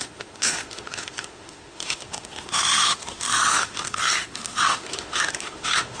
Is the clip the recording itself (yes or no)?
no